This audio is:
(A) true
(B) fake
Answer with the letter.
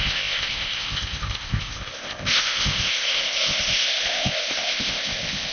B